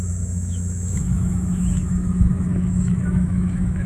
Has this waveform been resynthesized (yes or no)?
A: yes